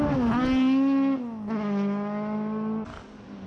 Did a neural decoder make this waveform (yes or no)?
no